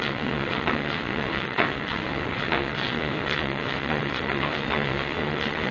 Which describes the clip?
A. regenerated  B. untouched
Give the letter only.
A